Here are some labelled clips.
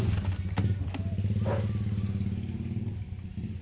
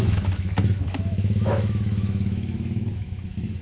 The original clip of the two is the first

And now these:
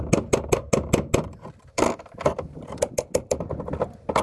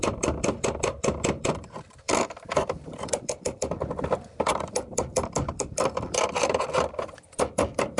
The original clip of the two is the first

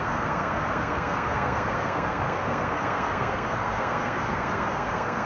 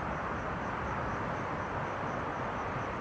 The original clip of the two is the second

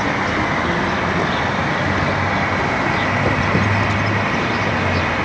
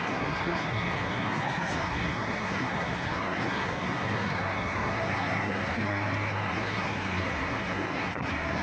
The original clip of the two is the first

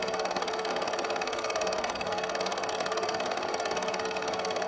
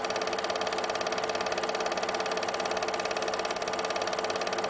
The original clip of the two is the second